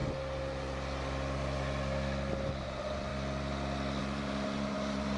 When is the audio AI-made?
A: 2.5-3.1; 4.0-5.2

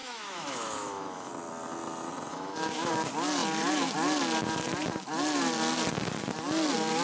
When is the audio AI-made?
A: 0.0-1.3; 2.3-2.9

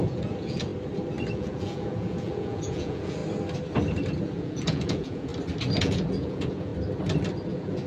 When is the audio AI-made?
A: 0.0-0.7; 1.3-3.2; 4.2-5.3; 5.8-6.7; 7.5-7.9

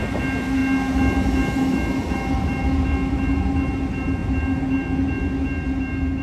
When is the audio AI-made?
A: none